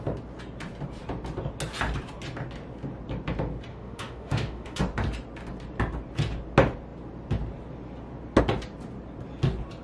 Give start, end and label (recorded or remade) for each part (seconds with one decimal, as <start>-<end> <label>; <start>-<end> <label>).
0.0-3.7 recorded; 3.7-4.8 remade; 4.8-9.8 recorded